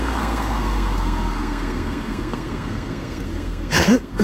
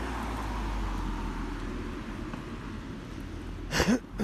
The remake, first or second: first